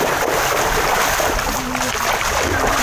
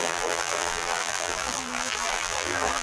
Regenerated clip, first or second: second